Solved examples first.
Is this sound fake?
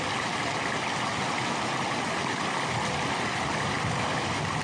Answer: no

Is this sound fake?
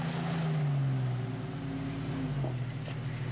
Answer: no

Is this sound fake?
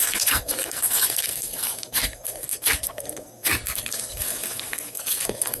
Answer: yes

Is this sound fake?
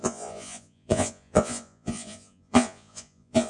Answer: yes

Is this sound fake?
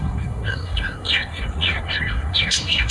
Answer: yes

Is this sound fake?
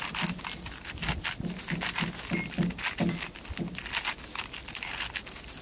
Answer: no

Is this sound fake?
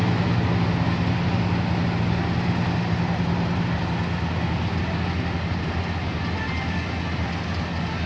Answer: no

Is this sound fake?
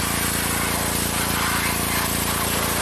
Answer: no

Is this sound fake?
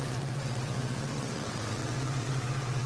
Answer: yes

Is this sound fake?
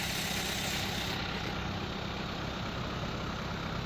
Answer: no